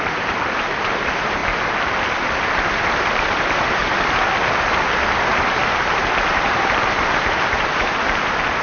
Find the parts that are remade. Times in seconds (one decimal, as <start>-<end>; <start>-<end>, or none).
0.0-1.4; 2.7-3.8; 6.3-8.6